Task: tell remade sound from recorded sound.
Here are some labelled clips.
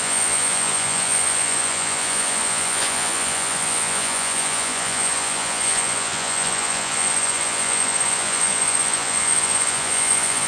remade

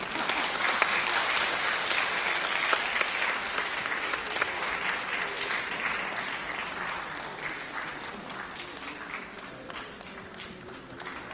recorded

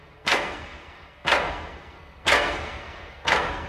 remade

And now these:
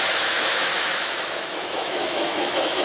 remade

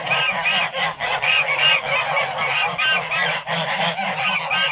recorded